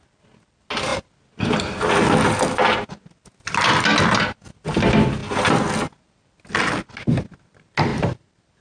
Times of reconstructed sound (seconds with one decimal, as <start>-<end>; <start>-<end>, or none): 7.9-8.6